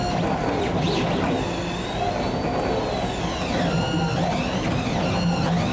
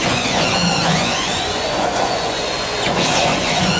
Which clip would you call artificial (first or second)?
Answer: second